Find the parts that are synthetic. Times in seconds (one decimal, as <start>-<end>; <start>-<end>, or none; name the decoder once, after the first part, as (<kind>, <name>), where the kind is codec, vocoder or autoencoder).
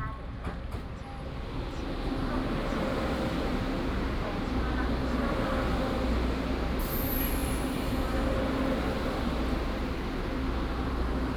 none